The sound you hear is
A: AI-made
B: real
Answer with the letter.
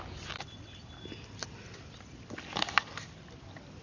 B